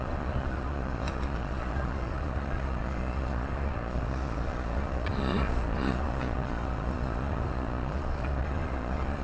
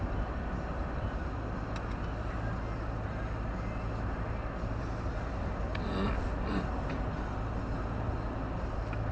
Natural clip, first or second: second